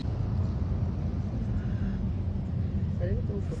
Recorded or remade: recorded